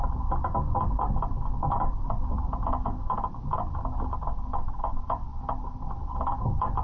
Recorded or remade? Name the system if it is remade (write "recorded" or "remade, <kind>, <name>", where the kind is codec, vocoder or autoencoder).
recorded